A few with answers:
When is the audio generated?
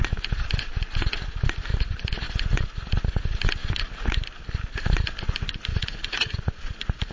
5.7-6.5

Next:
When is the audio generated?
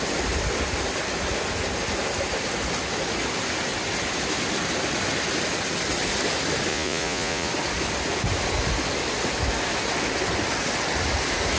6.7-7.5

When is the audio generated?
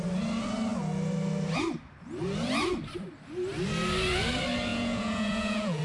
4.7-5.8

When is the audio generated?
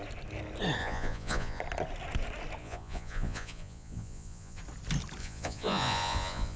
0.8-1.6; 2.6-4.6; 5.2-6.6